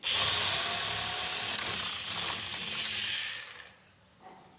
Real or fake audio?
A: real